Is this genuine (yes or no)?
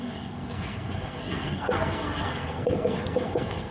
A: no